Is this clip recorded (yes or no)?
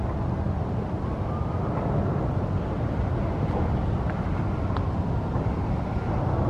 yes